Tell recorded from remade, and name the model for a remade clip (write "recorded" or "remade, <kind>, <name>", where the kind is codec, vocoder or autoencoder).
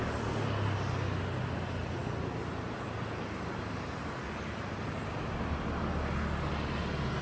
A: recorded